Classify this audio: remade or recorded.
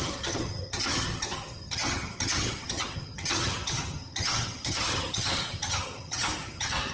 remade